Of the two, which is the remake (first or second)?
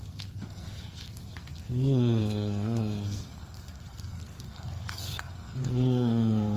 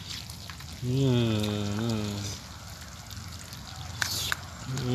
first